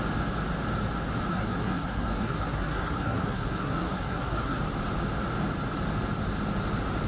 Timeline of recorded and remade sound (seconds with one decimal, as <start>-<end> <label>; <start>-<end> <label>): 0.0-1.3 recorded; 1.3-4.6 remade; 4.6-7.1 recorded